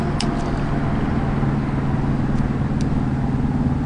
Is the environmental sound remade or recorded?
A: recorded